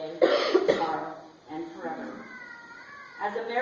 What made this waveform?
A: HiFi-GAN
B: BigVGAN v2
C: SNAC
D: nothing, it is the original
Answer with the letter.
D